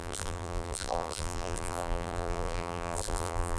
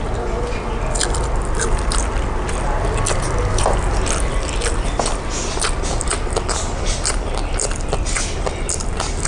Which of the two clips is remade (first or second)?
first